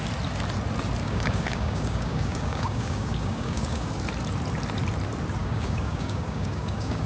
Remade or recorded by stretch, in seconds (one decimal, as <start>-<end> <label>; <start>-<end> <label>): 0.0-1.0 recorded; 1.0-3.9 remade; 3.9-5.4 recorded; 5.4-7.1 remade